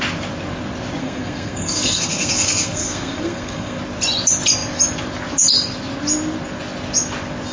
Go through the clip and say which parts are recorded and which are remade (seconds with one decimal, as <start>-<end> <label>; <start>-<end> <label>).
0.0-1.0 recorded; 1.0-3.8 remade; 3.8-7.5 recorded